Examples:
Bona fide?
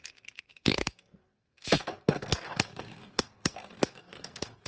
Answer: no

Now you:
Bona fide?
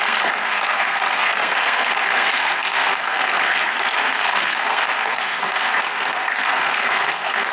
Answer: no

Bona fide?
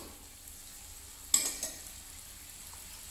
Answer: yes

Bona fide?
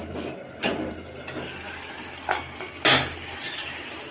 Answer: yes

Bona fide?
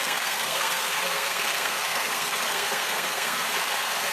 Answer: no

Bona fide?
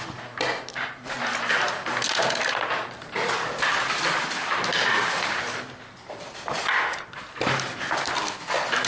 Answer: yes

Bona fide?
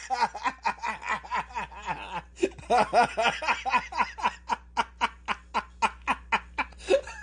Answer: yes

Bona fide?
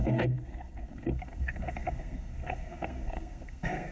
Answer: no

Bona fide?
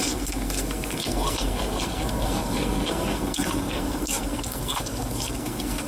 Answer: no